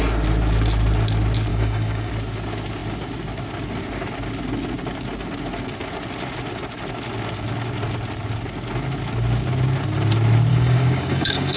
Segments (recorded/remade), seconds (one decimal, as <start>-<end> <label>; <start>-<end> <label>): 0.0-1.5 recorded; 1.5-2.1 remade; 2.1-10.5 recorded; 10.5-11.6 remade